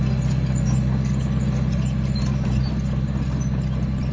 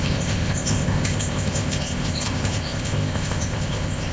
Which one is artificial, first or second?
second